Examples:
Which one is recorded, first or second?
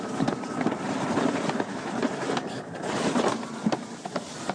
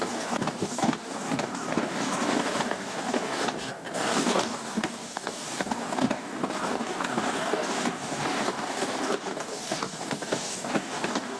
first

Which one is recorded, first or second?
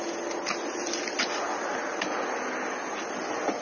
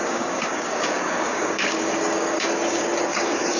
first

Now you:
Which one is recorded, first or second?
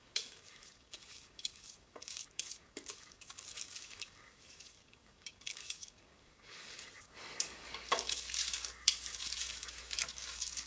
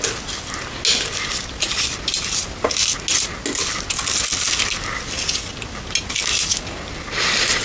second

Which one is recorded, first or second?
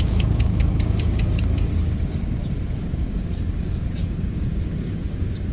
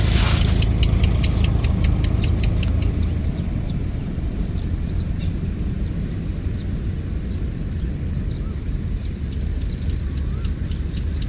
second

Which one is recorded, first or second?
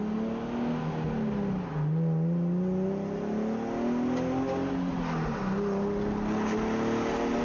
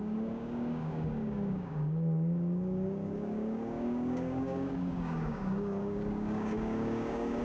first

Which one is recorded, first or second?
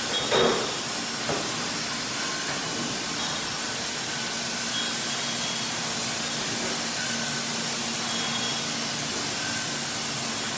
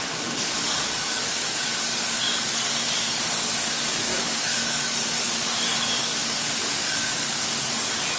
first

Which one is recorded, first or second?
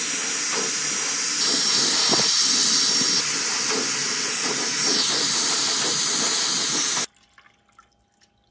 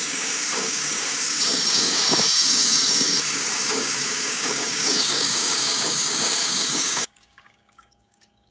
first